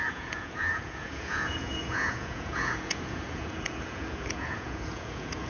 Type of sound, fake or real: fake